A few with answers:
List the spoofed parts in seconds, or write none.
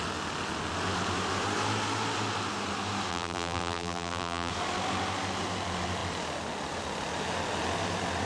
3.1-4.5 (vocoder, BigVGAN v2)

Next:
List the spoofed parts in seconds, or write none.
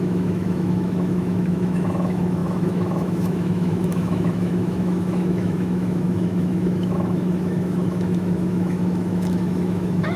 0.0-10.2 (autoencoder, DAC-VAE)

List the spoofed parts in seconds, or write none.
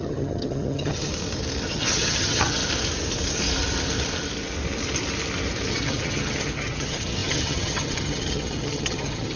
0.0-1.1 (vocoder, HiFi-GAN); 1.7-2.6; 5.7-9.4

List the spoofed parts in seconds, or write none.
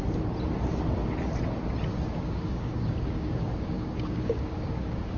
1.9-5.2 (codec, DAC)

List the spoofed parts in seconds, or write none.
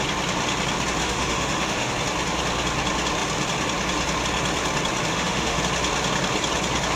1.0-1.9 (autoencoder, DAC-VAE); 5.1-5.6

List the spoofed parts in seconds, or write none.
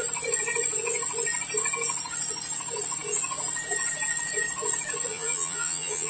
5.1-6.1 (vocoder, BigVGAN v2)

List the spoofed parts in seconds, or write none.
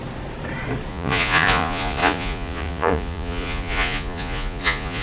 0.9-5.0 (vocoder, Vocos)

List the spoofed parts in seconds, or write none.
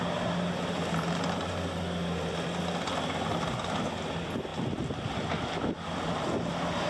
none